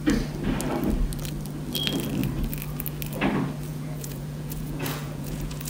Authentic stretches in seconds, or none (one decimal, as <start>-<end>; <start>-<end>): 0.0-3.7